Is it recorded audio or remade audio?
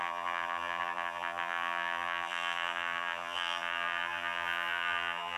remade